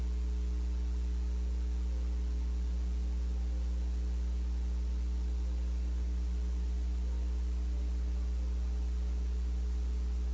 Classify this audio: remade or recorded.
recorded